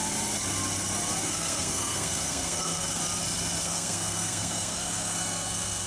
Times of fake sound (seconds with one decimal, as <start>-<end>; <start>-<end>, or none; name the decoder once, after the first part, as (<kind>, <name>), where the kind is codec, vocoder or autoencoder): 1.2-3.0 (codec, SNAC); 3.6-5.9